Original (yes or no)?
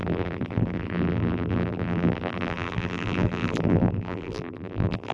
no